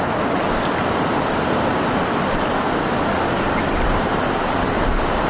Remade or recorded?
recorded